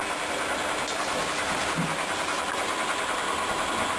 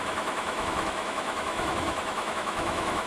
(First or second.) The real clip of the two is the first